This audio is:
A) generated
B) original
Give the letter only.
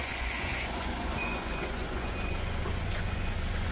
A